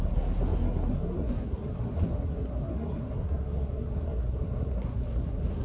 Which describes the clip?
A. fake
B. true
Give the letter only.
A